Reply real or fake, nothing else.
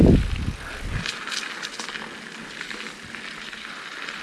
real